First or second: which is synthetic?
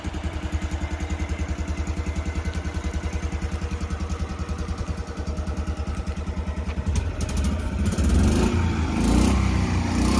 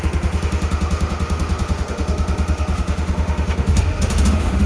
second